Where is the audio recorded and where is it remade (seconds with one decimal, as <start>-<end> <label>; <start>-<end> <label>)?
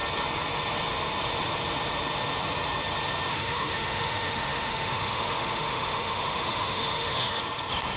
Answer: 0.0-3.3 recorded; 3.3-7.4 remade; 7.4-8.0 recorded